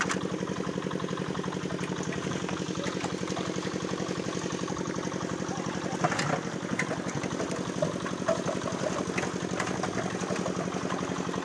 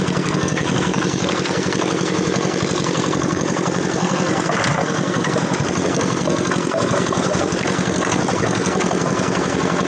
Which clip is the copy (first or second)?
second